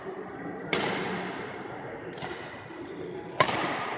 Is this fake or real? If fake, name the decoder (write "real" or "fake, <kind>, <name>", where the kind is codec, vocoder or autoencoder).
fake, vocoder, BigVGAN v2